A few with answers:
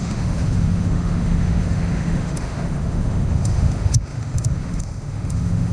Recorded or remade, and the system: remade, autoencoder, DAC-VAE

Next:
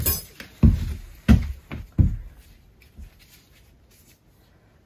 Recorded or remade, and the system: recorded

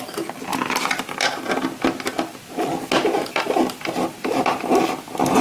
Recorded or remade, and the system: recorded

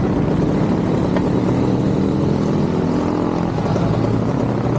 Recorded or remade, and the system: recorded